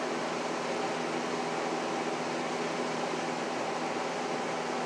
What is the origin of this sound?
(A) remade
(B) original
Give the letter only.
B